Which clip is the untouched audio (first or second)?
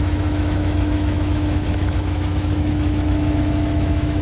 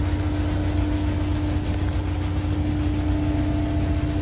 second